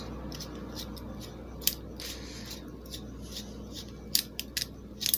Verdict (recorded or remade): recorded